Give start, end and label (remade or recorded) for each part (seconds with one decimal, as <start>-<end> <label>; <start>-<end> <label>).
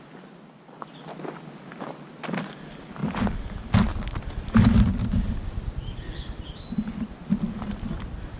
0.0-8.4 recorded